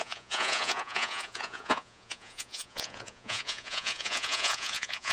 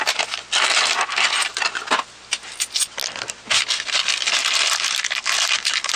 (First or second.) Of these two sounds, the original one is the second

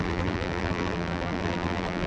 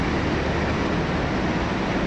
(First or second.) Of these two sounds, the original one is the second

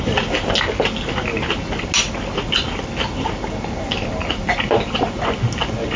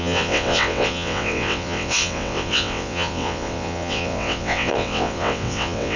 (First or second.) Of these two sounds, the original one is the first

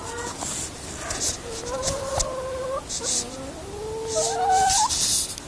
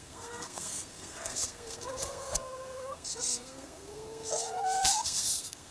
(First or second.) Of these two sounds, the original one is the first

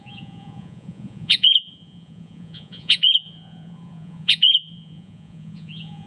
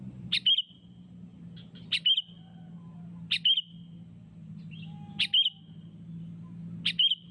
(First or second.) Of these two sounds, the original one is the second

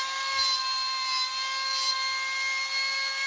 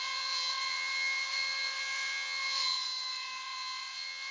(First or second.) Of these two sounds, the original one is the first